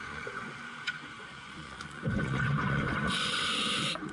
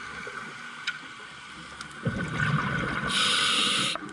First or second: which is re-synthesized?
first